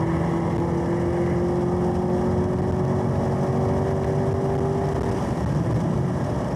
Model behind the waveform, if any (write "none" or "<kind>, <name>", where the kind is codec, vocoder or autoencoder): none